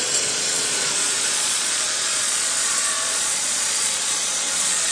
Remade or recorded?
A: remade